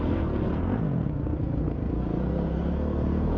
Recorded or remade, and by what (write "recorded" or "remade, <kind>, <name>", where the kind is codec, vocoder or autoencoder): remade, codec, SNAC